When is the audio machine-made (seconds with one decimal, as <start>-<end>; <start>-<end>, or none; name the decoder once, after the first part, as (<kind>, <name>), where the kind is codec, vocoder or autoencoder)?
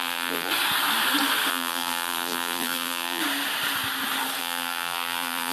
0.0-0.5 (vocoder, BigVGAN v2); 1.5-3.2; 4.4-5.5